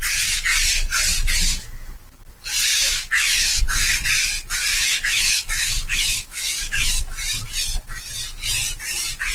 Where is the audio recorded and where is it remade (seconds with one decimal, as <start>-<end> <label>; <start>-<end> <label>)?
0.0-1.6 recorded; 1.6-2.2 remade; 2.2-2.7 recorded; 2.7-3.6 remade; 3.6-4.7 recorded; 4.7-7.0 remade; 7.0-9.3 recorded